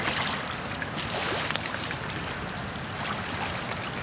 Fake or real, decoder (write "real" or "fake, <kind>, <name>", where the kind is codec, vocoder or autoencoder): real